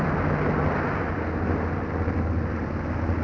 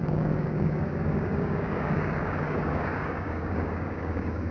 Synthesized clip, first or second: second